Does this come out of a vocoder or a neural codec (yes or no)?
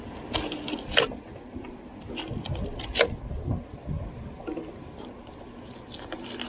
no